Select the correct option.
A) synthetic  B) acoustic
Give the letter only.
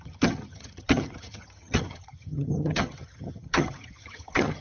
A